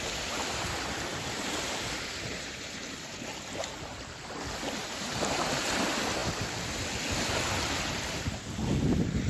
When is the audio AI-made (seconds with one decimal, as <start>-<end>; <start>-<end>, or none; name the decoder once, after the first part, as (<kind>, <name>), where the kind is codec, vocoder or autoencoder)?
1.1-3.2 (vocoder, BigVGAN v2); 4.8-5.5